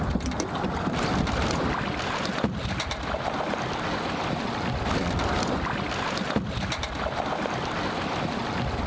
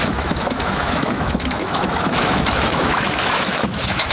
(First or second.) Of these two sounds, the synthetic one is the second